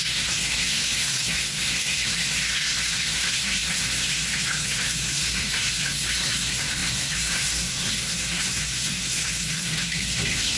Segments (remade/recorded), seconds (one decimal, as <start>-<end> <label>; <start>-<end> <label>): 0.0-10.6 remade